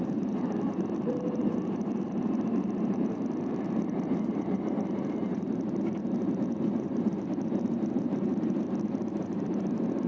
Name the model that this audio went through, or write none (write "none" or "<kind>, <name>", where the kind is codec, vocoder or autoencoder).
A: vocoder, BigVGAN v2